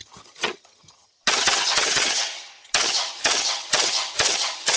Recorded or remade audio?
remade